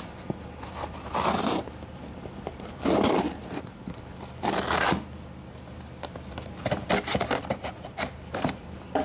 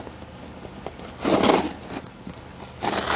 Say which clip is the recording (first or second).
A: second